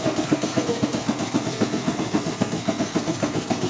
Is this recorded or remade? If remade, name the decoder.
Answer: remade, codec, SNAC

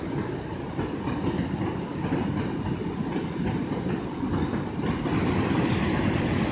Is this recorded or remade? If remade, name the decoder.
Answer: recorded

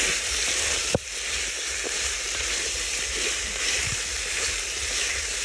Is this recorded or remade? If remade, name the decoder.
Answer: remade, vocoder, BigVGAN v2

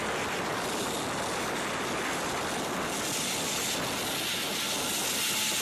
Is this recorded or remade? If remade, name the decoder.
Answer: recorded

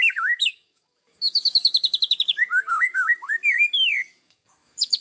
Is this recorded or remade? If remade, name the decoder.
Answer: remade, codec, DAC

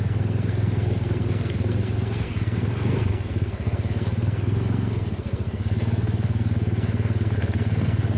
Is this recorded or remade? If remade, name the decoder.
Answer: remade, codec, SNAC